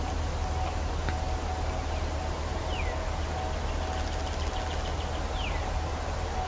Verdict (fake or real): real